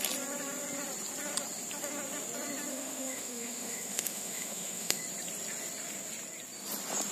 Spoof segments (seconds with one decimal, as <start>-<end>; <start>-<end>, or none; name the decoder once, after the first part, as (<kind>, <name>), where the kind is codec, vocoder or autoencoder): 2.7-5.0 (autoencoder, DAC-VAE)